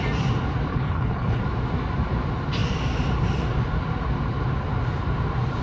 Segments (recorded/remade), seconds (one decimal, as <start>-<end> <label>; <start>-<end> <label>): 0.0-0.7 recorded; 0.7-1.4 remade; 1.4-5.6 recorded